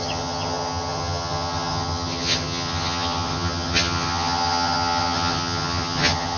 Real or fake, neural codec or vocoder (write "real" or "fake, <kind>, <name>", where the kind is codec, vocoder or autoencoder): fake, vocoder, HiFi-GAN